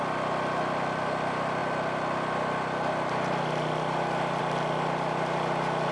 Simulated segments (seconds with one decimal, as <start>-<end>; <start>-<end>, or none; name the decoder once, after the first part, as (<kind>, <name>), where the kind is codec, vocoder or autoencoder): none